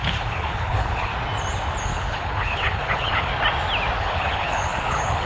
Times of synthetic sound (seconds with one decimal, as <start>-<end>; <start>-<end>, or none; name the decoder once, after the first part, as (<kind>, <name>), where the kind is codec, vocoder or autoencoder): 0.0-1.1 (codec, HILCodec); 1.8-3.3; 4.0-5.3